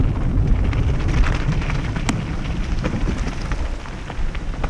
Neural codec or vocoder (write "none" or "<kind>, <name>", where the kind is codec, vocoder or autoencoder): none